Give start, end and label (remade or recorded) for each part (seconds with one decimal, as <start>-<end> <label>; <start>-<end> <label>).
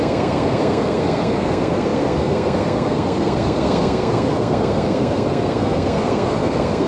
0.0-6.9 remade